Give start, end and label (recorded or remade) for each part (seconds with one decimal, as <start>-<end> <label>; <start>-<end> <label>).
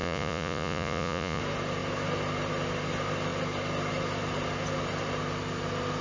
0.0-1.4 remade; 1.4-6.0 recorded